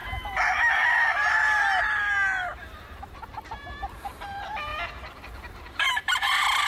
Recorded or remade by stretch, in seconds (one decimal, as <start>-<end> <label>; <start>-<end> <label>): 0.0-1.8 recorded; 1.8-6.7 remade

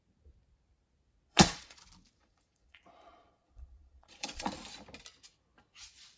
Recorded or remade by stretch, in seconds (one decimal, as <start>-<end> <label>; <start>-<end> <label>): 0.0-1.3 recorded; 1.3-1.8 remade; 1.8-2.2 recorded; 2.2-4.5 remade; 4.5-6.2 recorded

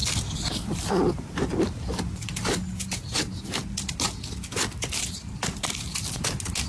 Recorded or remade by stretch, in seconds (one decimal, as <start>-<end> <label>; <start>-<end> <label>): 0.0-6.7 recorded

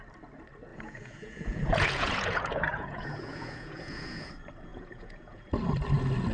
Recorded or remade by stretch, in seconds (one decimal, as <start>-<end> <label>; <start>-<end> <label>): 0.0-0.7 recorded; 0.7-4.3 remade; 4.3-4.7 recorded; 4.7-5.5 remade; 5.5-6.3 recorded

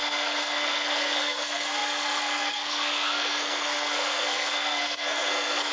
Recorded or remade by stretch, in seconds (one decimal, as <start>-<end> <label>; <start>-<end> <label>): 0.0-5.7 remade

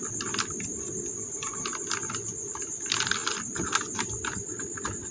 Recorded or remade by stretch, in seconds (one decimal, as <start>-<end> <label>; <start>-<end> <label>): 0.0-5.1 recorded

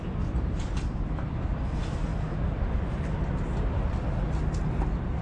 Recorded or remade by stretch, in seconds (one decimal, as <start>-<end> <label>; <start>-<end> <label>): 0.0-5.2 recorded